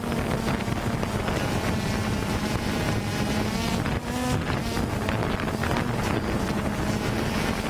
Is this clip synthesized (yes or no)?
no